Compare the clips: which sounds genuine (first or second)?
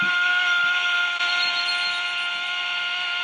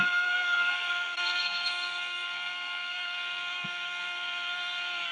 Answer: first